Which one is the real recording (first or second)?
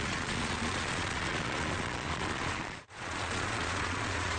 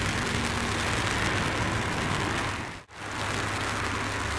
second